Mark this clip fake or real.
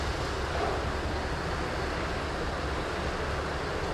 real